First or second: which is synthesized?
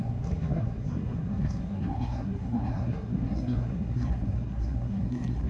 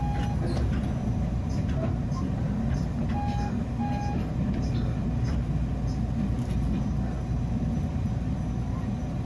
first